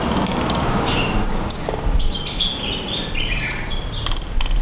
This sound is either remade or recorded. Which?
recorded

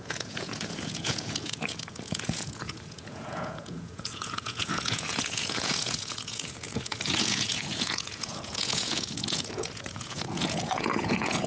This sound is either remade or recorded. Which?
remade